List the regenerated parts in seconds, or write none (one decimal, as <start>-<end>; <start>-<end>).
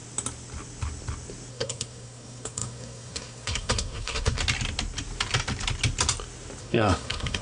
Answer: 1.5-4.4; 6.6-7.4